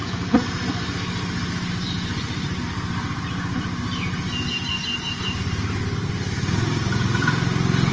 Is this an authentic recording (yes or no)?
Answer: yes